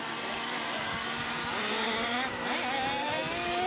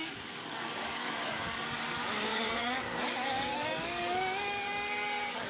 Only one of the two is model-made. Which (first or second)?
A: second